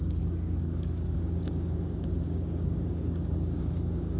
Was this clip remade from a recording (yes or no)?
yes